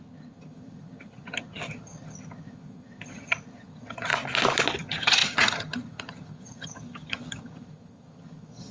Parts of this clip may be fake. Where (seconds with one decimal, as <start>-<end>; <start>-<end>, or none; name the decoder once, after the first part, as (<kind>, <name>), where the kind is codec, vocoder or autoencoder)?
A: 0.0-4.1 (vocoder, HiFi-GAN); 4.8-8.7